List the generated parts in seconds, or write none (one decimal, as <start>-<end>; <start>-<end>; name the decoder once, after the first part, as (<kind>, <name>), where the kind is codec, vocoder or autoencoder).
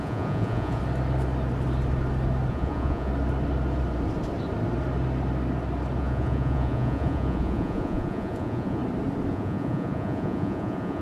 0.0-0.8 (vocoder, Vocos); 2.5-3.1; 6.0-8.8; 9.3-11.0